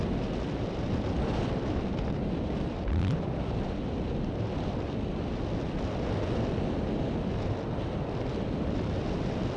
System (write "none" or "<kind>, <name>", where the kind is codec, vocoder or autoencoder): vocoder, BigVGAN v2